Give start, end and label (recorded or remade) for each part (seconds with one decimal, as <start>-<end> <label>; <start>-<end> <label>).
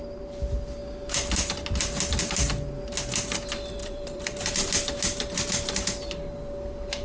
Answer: 0.0-3.8 recorded; 3.8-4.5 remade; 4.5-7.0 recorded